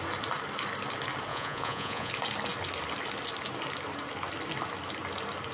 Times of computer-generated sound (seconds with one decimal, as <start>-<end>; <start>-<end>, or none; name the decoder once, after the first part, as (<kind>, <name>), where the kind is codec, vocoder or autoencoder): 1.3-2.1 (vocoder, Vocos)